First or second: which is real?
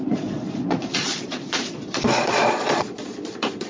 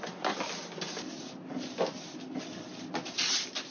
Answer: second